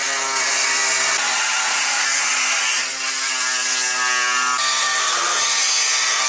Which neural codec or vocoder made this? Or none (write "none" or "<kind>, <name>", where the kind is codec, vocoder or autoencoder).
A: none